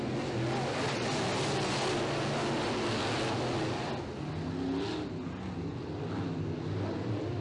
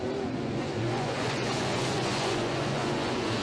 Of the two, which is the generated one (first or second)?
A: second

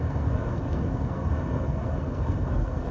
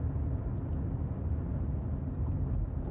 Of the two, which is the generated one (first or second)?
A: first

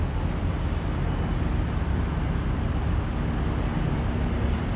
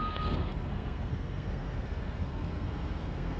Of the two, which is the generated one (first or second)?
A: second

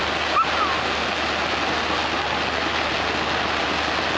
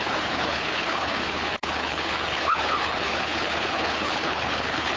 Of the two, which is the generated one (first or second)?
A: second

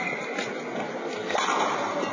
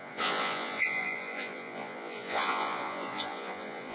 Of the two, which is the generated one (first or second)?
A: second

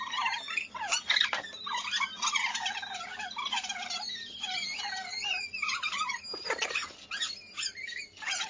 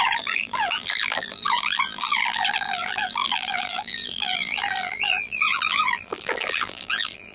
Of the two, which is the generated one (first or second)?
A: second